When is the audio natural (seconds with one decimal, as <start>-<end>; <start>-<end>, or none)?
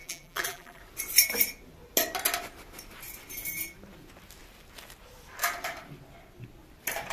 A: 0.8-7.1